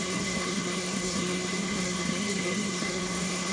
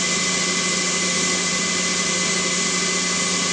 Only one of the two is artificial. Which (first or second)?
first